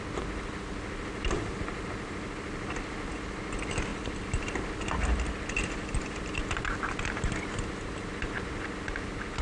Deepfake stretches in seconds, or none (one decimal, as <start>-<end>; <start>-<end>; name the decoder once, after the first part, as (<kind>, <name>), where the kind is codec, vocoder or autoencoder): none

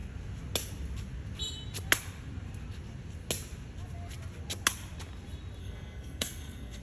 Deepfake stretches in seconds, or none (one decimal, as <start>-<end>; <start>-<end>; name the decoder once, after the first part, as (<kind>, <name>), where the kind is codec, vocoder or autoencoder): 5.6-6.8 (codec, SNAC)

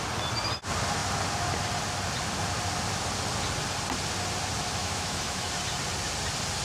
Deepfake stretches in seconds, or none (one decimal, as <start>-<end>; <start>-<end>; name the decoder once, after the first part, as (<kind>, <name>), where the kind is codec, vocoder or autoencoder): 4.8-5.4 (autoencoder, DAC-VAE)